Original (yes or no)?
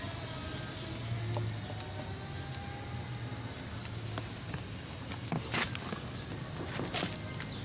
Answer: yes